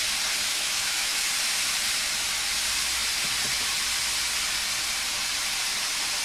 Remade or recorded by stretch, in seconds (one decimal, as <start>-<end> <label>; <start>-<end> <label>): 0.0-0.5 recorded; 0.5-1.3 remade; 1.3-6.2 recorded